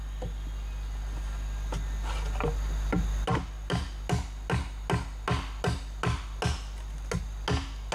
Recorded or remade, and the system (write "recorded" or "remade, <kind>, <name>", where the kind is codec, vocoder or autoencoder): recorded